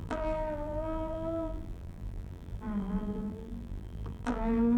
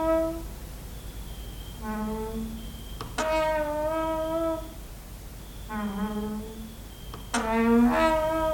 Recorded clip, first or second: second